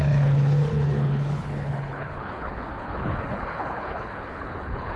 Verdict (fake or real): fake